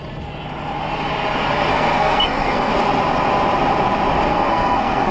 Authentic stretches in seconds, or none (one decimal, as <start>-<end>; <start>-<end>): 0.0-1.7; 2.7-4.3